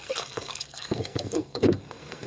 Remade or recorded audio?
remade